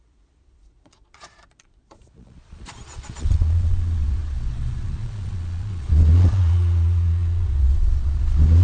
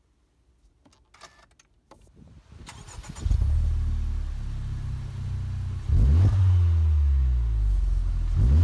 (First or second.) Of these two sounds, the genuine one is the second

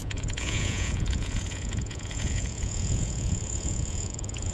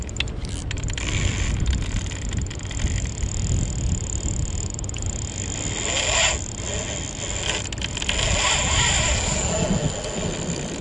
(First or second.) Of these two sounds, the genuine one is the second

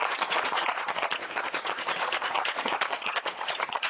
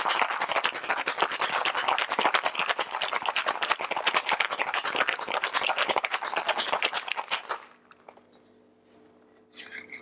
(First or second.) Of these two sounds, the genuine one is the second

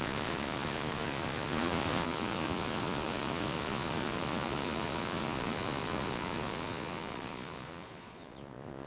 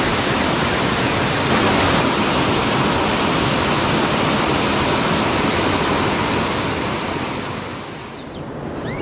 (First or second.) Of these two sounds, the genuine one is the second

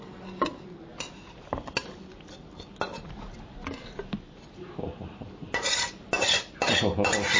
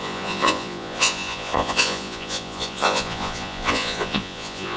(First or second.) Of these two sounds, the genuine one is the first